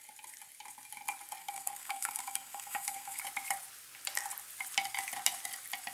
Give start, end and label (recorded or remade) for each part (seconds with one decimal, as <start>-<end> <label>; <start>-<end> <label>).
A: 0.0-1.4 recorded; 1.4-3.2 remade; 3.2-5.9 recorded